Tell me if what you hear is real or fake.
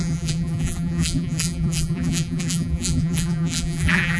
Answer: fake